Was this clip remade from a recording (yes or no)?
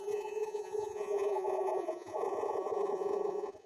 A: yes